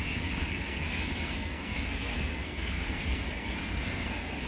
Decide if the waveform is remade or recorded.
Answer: remade